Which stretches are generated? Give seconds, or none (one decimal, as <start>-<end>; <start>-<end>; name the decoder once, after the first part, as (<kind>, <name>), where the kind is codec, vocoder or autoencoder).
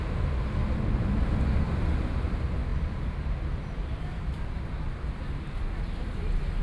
none